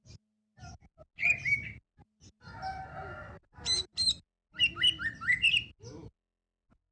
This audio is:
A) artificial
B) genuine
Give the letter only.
B